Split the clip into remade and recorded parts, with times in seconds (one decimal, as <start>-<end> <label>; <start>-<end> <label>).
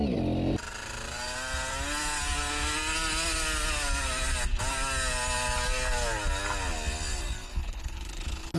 0.0-7.5 recorded; 7.5-8.6 remade